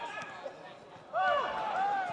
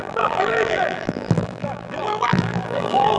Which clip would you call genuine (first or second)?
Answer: first